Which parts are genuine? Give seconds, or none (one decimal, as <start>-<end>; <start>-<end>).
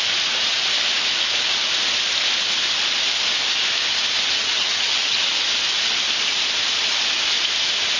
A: 0.0-4.4; 5.3-8.0